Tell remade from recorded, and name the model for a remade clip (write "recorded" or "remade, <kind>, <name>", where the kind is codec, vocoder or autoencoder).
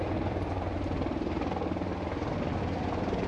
recorded